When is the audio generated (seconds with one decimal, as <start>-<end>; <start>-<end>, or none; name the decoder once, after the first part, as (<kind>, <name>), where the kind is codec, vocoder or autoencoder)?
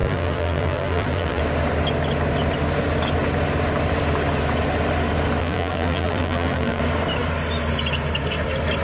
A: 0.0-1.4 (vocoder, BigVGAN v2); 5.4-6.8